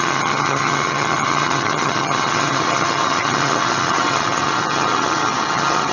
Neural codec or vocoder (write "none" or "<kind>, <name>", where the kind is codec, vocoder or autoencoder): vocoder, HiFi-GAN